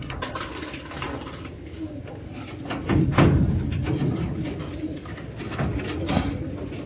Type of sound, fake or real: real